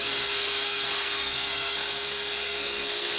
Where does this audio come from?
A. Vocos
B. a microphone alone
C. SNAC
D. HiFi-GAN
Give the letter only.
C